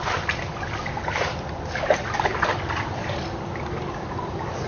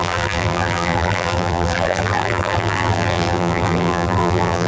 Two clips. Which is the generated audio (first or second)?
second